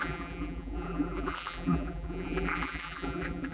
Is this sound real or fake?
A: fake